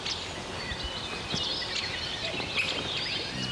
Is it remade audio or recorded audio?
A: recorded